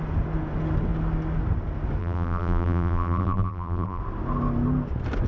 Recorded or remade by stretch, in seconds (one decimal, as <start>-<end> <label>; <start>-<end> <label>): 0.0-2.0 recorded; 2.0-4.0 remade; 4.0-5.3 recorded